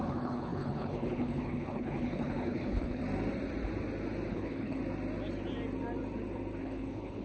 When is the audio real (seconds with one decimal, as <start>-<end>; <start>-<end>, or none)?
3.0-4.3; 4.8-6.6